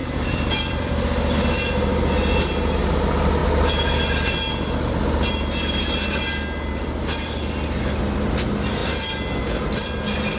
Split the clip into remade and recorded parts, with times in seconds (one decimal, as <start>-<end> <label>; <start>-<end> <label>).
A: 0.0-0.9 remade; 0.9-10.4 recorded